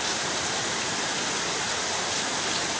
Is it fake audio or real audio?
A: fake